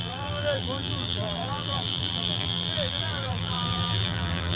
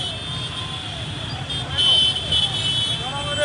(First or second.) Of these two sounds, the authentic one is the second